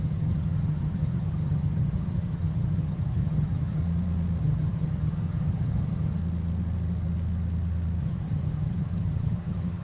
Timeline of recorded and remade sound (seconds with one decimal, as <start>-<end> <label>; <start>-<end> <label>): 0.0-3.8 remade; 3.8-4.4 recorded; 4.4-6.2 remade; 6.2-8.0 recorded; 8.0-9.8 remade